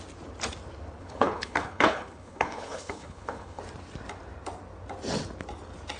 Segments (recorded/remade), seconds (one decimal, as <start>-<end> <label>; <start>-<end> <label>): 0.0-1.0 recorded; 1.0-3.6 remade; 3.6-6.0 recorded